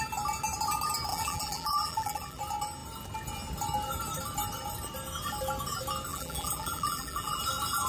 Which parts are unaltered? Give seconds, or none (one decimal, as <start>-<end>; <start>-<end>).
0.0-1.1; 2.4-6.1; 7.4-7.9